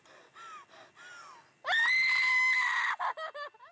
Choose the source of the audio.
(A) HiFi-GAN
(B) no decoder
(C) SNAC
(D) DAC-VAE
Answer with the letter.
B